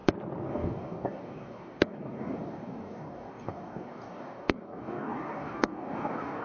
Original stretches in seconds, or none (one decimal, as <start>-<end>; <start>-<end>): 0.0-0.5